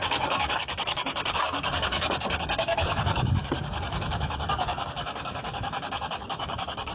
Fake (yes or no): yes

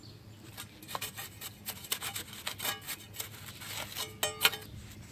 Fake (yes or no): no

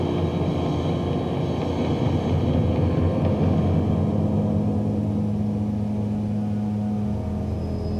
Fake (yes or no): no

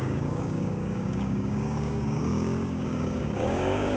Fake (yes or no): yes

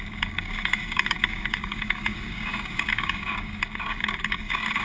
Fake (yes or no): yes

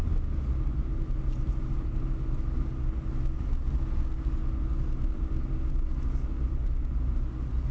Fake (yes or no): no